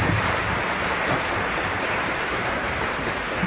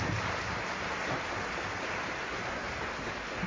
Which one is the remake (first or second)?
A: first